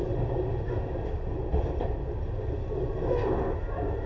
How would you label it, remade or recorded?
recorded